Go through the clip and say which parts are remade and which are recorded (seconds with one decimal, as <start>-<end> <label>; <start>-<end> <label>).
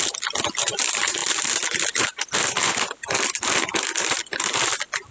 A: 0.0-5.1 recorded